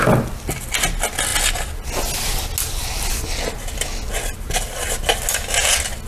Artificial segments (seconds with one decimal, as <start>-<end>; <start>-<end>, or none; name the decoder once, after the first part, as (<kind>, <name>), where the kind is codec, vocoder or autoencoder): none